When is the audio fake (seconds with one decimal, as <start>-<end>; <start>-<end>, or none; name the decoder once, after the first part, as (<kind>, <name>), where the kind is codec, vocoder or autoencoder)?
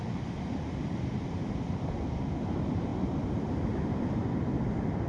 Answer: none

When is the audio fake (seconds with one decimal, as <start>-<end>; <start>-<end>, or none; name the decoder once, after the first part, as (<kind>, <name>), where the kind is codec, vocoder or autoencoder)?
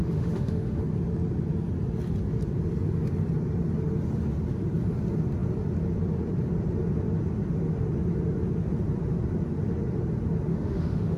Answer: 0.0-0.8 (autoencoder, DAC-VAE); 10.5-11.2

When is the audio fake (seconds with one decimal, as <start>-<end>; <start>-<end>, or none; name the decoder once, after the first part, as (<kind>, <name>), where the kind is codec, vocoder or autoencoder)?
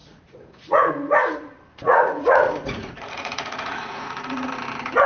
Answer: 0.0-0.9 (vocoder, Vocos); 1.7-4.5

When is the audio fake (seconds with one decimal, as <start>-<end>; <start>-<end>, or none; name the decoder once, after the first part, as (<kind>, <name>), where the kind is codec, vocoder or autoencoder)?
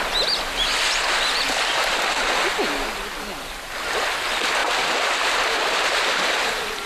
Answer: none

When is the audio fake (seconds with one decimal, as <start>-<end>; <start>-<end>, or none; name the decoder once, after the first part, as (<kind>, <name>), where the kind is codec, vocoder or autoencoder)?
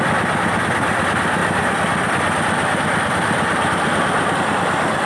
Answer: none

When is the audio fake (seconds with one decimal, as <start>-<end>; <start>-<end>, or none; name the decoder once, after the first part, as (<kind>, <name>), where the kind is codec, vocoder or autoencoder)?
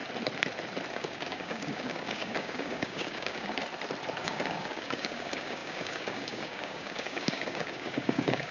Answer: 0.9-3.6 (codec, DAC); 4.2-8.5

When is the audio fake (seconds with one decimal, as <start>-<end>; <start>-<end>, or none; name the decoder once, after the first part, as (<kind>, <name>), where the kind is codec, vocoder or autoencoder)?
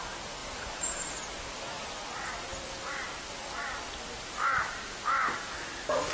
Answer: 0.4-1.1 (vocoder, BigVGAN v2)